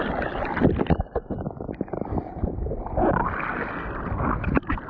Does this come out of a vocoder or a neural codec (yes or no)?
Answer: no